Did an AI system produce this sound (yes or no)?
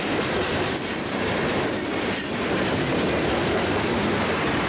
no